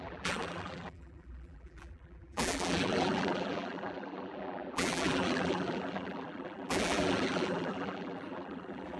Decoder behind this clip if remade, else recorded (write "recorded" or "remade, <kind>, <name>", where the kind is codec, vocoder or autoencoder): remade, vocoder, BigVGAN v2